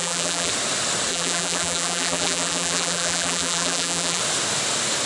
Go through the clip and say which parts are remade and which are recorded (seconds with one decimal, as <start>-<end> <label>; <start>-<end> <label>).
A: 0.0-0.5 remade; 0.5-1.1 recorded; 1.1-4.2 remade; 4.2-5.1 recorded